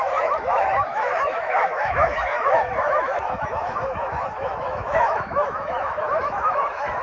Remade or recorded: remade